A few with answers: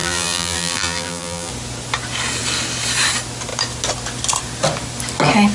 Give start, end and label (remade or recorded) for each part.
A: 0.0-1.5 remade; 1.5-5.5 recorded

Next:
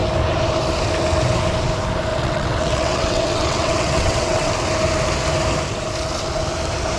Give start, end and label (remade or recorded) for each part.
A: 0.0-2.1 recorded; 2.1-4.5 remade; 4.5-7.0 recorded

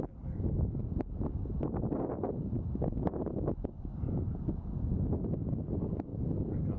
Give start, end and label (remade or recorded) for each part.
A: 0.0-6.8 recorded

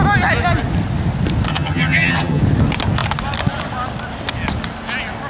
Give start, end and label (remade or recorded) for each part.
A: 0.0-1.5 recorded; 1.5-2.4 remade; 2.4-5.3 recorded

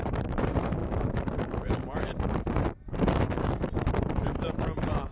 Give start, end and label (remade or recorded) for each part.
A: 0.0-5.1 remade